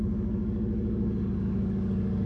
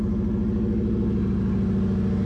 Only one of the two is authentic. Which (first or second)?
second